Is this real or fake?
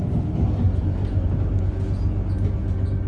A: real